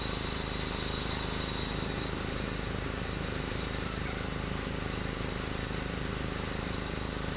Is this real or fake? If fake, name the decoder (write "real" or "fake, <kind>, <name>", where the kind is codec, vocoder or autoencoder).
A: fake, vocoder, BigVGAN v2